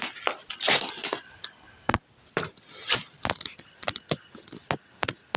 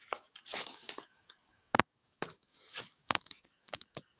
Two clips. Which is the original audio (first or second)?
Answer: first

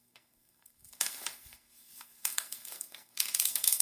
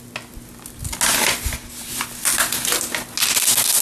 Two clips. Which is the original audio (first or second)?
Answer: second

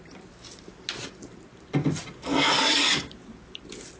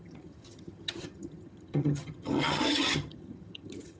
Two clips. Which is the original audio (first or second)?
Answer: first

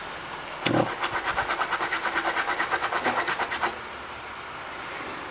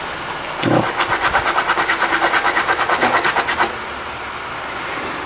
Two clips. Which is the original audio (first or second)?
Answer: second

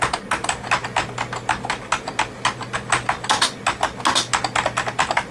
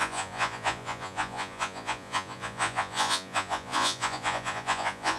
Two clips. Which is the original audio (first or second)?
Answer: first